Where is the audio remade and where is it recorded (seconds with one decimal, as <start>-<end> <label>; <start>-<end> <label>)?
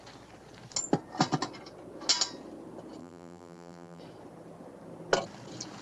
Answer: 0.0-3.0 recorded; 3.0-4.0 remade; 4.0-5.8 recorded